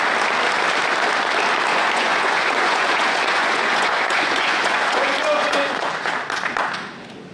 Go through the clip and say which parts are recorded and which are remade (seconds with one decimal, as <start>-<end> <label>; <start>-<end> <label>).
0.0-1.7 recorded; 1.7-6.1 remade; 6.1-7.3 recorded